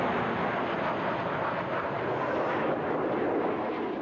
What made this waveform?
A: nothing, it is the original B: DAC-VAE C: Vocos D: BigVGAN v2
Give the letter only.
A